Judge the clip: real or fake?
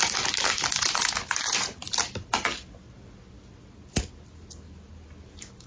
real